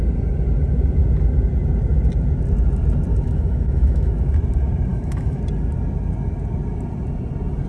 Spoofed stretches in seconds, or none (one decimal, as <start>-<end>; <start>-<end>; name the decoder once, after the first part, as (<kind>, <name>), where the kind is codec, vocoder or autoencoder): 3.1-4.3 (autoencoder, DAC-VAE); 4.9-5.4